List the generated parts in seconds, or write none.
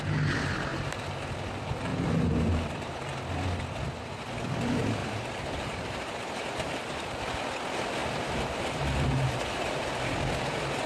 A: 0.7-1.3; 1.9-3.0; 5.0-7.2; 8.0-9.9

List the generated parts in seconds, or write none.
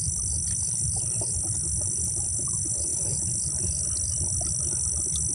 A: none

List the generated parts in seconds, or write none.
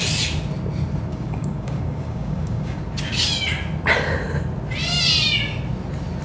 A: 1.1-2.8